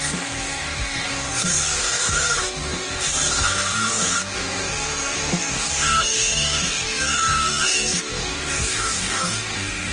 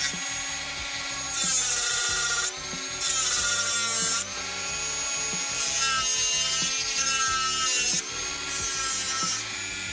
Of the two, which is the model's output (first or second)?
first